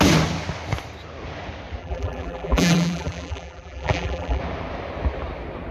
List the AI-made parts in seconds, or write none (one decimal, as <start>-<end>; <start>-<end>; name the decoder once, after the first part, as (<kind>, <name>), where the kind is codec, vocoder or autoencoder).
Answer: 1.8-4.4 (vocoder, BigVGAN v2)